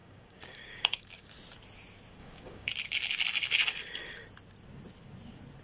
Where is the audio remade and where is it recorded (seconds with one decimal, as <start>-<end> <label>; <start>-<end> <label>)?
0.0-1.3 remade; 1.3-2.2 recorded; 2.2-2.7 remade; 2.7-5.6 recorded

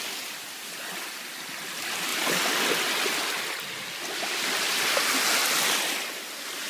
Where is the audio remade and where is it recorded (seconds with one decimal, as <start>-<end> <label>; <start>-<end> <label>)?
0.0-6.7 recorded